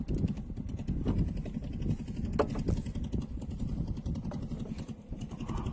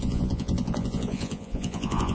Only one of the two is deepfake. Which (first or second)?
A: second